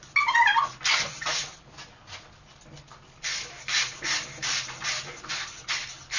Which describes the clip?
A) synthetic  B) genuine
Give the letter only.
B